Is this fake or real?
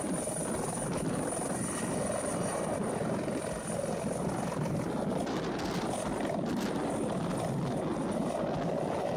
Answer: real